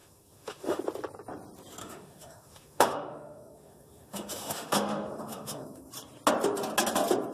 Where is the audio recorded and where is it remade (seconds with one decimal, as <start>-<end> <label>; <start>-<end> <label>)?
0.0-0.8 remade; 0.8-1.8 recorded; 1.8-5.9 remade; 5.9-7.3 recorded